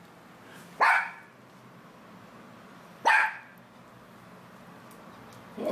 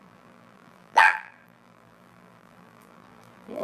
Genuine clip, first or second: first